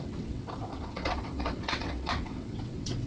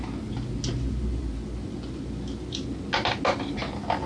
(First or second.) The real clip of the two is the second